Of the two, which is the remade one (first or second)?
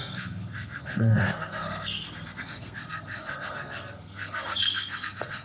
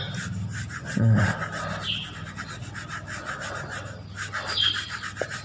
first